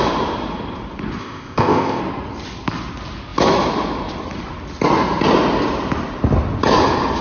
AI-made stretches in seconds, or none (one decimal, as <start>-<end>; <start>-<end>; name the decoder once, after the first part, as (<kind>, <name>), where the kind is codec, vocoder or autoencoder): 1.2-2.0 (codec, ZipCodec)